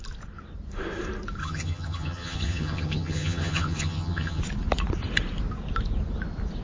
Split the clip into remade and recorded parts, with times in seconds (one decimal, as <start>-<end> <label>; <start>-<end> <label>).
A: 0.0-1.4 recorded; 1.4-4.4 remade; 4.4-6.6 recorded